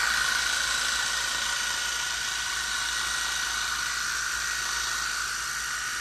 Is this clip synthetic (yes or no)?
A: no